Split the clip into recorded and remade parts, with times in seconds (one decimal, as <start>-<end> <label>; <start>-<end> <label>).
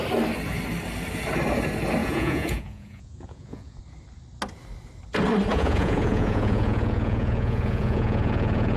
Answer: 0.0-2.0 recorded; 2.0-3.8 remade; 3.8-5.5 recorded; 5.5-8.8 remade